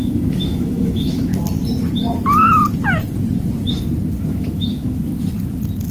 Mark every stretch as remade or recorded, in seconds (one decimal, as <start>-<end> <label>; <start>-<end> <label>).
0.0-1.3 remade; 1.3-4.2 recorded; 4.2-5.1 remade; 5.1-5.9 recorded